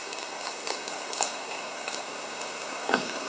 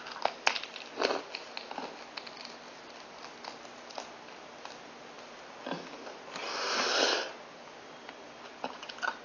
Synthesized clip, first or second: first